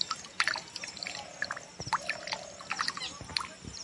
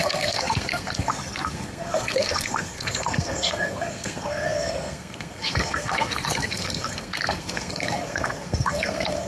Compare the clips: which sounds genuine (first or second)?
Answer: first